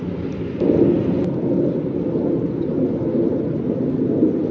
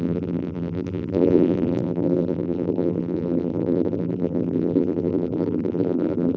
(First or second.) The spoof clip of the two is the second